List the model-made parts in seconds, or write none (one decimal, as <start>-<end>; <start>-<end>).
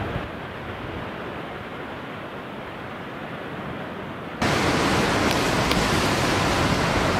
4.3-6.1